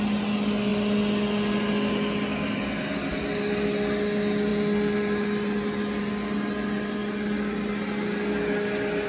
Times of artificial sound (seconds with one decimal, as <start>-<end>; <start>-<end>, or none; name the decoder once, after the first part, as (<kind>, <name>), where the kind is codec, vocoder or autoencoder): none